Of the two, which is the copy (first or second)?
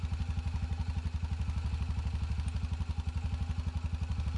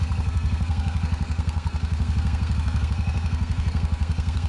second